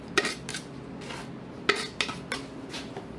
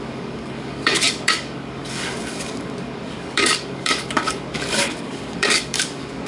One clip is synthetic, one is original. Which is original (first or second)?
first